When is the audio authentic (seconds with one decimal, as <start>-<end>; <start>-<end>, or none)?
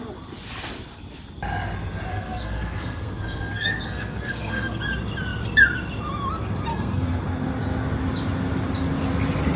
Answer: 0.0-2.1; 4.8-6.7; 7.2-9.6